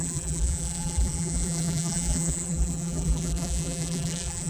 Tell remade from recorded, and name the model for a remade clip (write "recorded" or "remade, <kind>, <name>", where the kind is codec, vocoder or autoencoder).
remade, vocoder, BigVGAN v2